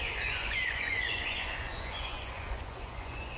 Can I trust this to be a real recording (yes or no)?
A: no